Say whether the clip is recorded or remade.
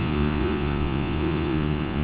remade